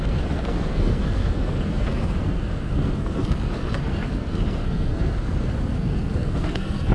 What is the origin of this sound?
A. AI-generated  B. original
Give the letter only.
A